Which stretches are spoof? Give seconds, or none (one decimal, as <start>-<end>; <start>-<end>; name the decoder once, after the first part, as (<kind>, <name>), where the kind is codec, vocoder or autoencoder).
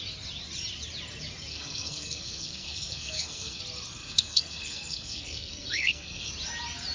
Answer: 1.5-3.6 (codec, SNAC); 4.0-6.3